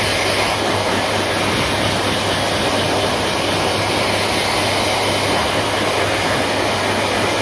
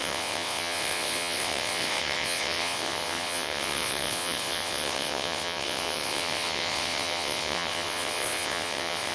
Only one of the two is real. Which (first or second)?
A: first